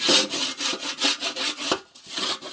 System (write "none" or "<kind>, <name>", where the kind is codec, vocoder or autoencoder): none